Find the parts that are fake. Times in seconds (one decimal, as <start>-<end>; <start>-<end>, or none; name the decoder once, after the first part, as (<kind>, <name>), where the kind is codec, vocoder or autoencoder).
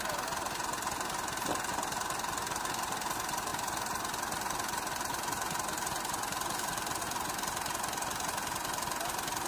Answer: none